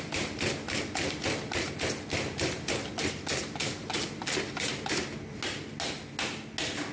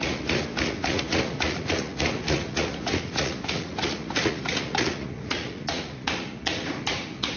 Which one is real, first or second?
first